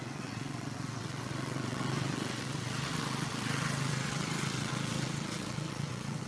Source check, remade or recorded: remade